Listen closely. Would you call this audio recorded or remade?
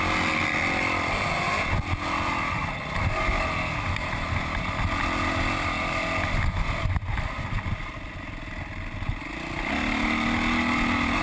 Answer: recorded